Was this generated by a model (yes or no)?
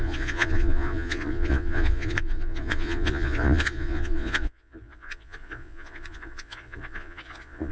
yes